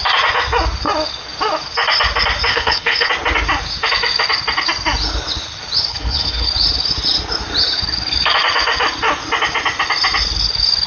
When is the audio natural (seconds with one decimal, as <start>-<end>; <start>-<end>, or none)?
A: 0.0-2.5; 3.1-5.9; 6.5-10.9